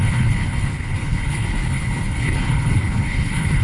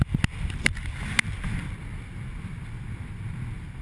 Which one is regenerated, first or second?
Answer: first